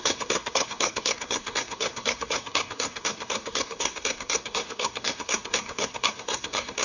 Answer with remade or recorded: remade